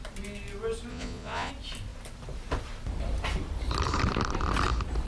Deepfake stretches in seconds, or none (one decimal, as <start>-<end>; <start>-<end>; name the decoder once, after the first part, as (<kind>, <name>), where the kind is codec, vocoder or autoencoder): 0.9-1.5 (vocoder, Vocos)